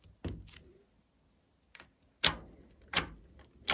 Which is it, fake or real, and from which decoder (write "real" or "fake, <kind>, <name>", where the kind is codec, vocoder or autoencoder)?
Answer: real